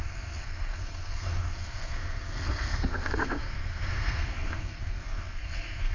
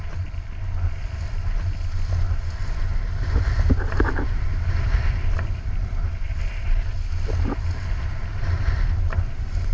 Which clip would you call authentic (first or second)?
second